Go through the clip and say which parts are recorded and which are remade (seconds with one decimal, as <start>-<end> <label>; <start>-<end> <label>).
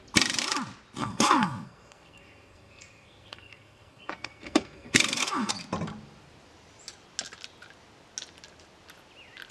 0.0-1.0 recorded; 1.0-5.5 remade; 5.5-9.5 recorded